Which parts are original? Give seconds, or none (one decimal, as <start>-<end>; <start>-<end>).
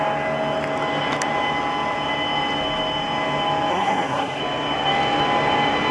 0.0-3.7; 4.4-5.9